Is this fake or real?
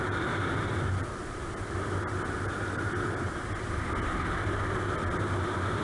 real